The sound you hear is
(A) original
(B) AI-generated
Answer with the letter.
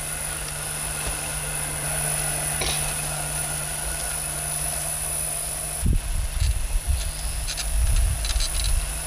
A